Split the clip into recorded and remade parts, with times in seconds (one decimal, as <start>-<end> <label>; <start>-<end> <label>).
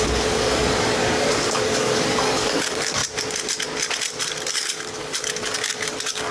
0.0-3.0 remade; 3.0-4.5 recorded; 4.5-6.3 remade